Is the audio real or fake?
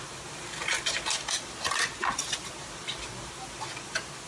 fake